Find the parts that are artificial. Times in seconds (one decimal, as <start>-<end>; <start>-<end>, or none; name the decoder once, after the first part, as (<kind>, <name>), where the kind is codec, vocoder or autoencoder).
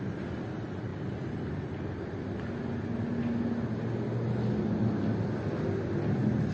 none